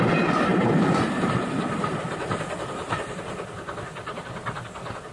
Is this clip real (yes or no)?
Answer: no